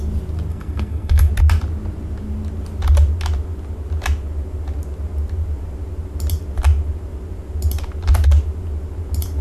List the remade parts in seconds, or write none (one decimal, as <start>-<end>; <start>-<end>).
0.5-1.3